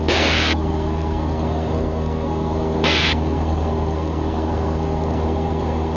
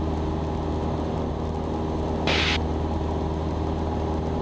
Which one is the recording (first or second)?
second